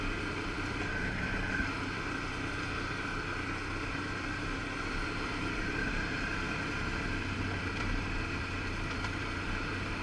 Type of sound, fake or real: fake